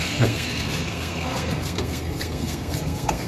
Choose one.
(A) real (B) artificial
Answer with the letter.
B